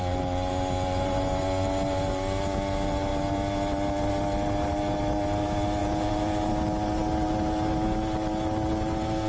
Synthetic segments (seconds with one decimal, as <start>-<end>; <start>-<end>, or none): 5.8-6.5